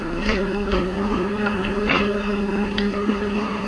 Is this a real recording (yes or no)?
no